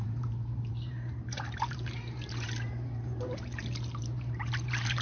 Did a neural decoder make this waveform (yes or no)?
yes